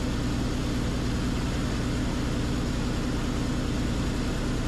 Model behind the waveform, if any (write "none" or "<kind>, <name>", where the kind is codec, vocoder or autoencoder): none